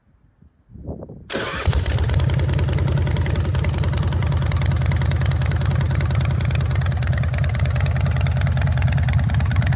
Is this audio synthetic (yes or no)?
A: no